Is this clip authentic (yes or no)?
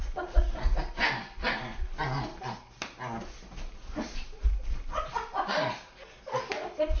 yes